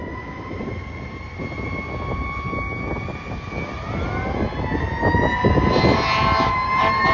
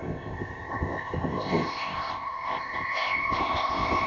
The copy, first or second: second